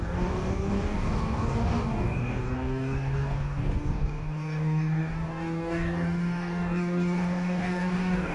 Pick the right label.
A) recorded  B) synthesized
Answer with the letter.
B